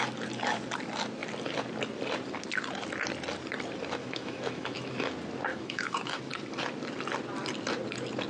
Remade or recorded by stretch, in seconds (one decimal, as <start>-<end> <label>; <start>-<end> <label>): 0.0-4.0 recorded; 4.0-5.1 remade; 5.1-5.5 recorded; 5.5-6.2 remade; 6.2-8.3 recorded